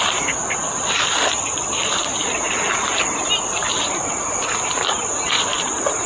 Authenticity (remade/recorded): recorded